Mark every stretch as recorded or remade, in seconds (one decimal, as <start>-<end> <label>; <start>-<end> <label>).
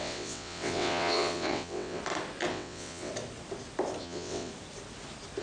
0.0-2.0 remade; 2.0-2.5 recorded; 2.5-3.1 remade; 3.1-4.0 recorded; 4.0-4.5 remade; 4.5-5.4 recorded